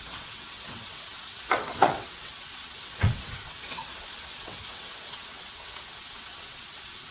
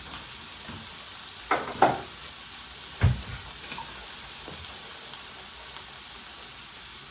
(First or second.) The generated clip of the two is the first